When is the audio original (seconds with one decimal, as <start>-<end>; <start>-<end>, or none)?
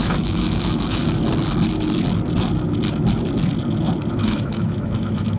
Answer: 1.0-4.2